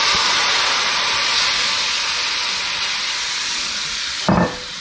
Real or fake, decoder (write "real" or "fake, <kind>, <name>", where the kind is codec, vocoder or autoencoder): real